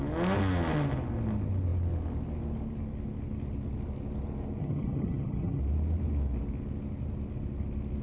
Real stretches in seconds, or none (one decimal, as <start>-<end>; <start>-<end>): 0.0-4.6; 5.6-8.0